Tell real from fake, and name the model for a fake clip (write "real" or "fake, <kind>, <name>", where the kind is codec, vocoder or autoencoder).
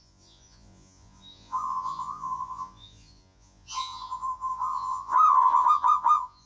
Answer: fake, vocoder, Vocos